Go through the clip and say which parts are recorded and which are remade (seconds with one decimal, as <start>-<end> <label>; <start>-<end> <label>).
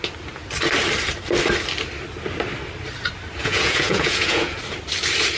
0.0-3.4 recorded; 3.4-4.6 remade; 4.6-5.4 recorded